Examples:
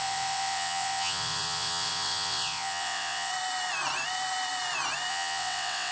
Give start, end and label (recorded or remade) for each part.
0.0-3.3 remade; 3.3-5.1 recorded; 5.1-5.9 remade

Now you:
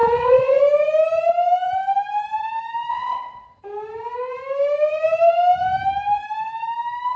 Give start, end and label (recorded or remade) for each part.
0.0-0.6 remade; 0.6-2.9 recorded; 2.9-3.6 remade; 3.6-7.2 recorded

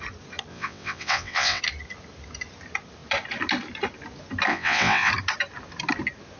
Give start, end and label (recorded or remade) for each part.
0.0-0.5 recorded; 0.5-1.6 remade; 1.6-4.5 recorded; 4.5-5.1 remade; 5.1-6.4 recorded